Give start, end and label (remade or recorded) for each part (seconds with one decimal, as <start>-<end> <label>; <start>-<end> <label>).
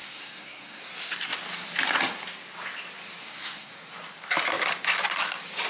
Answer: 0.0-0.8 remade; 0.8-3.2 recorded; 3.2-3.7 remade; 3.7-5.7 recorded